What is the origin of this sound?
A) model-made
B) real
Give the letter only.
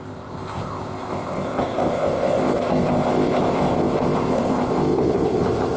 A